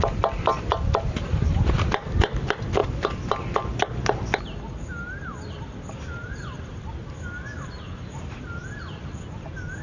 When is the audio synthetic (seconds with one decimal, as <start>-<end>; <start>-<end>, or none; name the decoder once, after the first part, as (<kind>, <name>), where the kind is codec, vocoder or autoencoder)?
none